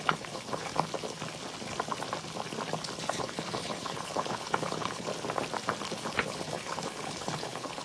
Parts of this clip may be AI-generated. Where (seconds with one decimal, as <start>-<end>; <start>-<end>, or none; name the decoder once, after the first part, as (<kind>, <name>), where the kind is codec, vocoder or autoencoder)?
0.0-0.7 (codec, HILCodec); 3.1-5.1; 6.1-7.8

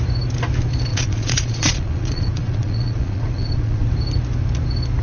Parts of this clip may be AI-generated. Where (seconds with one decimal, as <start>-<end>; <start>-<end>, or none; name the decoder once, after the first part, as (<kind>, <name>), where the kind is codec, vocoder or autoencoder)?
0.9-3.9 (vocoder, Vocos)